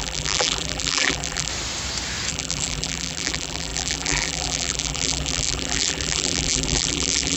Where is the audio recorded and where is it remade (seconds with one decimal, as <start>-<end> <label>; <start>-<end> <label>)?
0.0-1.5 remade; 1.5-2.3 recorded; 2.3-7.4 remade